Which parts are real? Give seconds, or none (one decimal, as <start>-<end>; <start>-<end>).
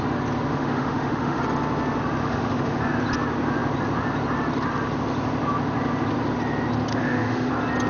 0.0-0.5; 1.4-2.2; 2.8-6.9; 7.5-7.9